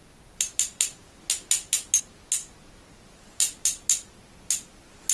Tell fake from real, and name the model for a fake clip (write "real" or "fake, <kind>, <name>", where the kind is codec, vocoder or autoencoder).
real